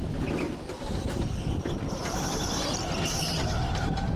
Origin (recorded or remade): recorded